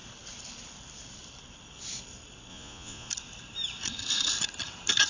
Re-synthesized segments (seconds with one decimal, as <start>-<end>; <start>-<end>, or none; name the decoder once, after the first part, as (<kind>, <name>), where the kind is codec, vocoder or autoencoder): 2.5-3.1 (vocoder, Vocos)